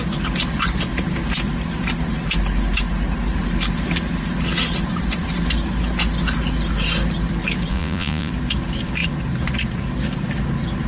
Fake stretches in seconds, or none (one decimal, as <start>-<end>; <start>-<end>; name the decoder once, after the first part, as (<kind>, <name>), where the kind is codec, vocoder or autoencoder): 7.7-8.3 (vocoder, Vocos)